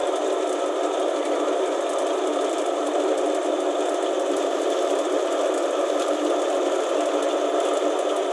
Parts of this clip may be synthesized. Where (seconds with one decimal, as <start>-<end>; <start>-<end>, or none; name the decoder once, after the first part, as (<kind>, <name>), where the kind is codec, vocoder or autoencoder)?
0.0-1.4 (vocoder, BigVGAN v2); 1.9-6.9